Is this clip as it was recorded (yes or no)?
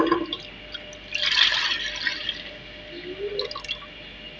yes